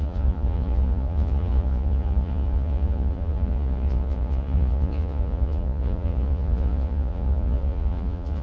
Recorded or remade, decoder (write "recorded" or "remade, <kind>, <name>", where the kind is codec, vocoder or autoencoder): remade, vocoder, Vocos